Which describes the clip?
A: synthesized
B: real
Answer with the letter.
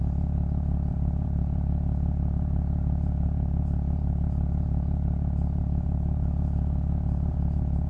A